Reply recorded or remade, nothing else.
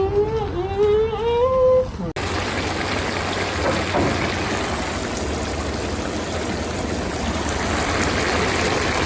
recorded